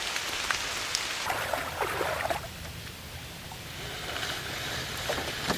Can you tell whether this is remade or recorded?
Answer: recorded